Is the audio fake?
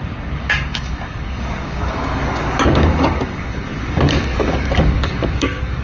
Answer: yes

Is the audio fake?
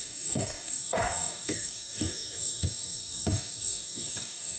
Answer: yes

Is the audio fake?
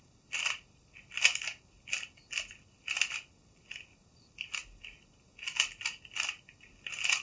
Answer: no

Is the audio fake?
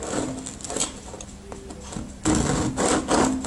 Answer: no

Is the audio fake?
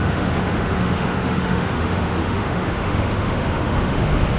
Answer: yes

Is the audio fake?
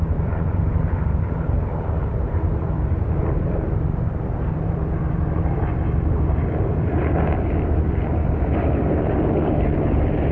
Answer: yes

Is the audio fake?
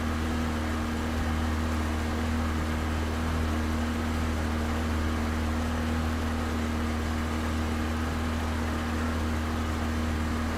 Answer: no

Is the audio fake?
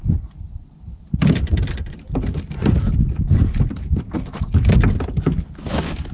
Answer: no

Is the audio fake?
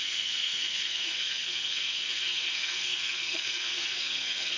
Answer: yes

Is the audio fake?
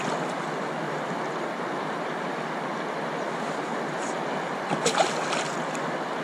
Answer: no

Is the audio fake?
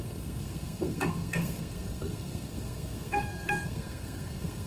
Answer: yes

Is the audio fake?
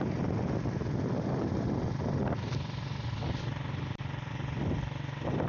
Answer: no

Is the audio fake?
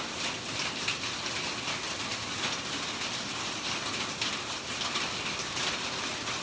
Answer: no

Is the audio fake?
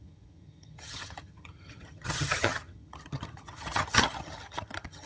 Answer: yes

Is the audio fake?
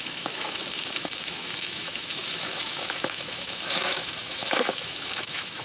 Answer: yes